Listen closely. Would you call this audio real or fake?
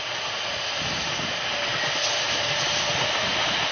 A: real